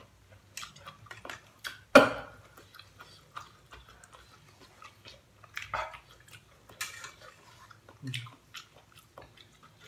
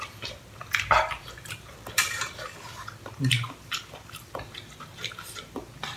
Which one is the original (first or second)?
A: first